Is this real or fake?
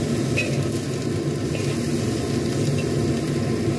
real